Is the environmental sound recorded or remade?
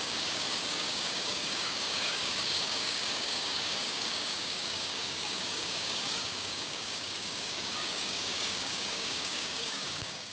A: remade